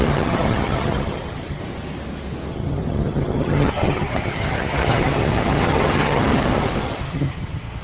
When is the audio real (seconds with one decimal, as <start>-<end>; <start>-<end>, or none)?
1.6-2.5

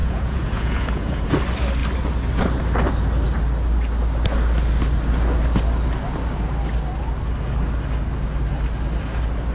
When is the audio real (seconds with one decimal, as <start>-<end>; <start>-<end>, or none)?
1.3-9.5